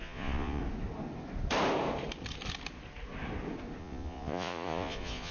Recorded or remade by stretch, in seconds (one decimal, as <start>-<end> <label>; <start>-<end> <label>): 0.0-0.6 remade; 0.6-3.8 recorded; 3.8-5.3 remade